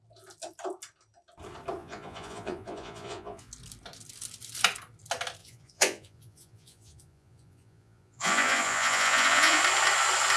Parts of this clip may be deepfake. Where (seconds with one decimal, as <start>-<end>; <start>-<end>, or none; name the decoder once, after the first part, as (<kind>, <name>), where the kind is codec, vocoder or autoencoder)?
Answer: 1.8-3.5 (vocoder, Vocos); 5.4-9.6